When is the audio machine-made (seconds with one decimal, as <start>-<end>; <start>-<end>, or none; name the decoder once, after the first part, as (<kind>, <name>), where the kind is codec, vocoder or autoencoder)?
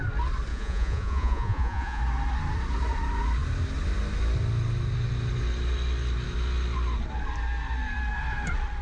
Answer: 0.5-2.0 (vocoder, Vocos)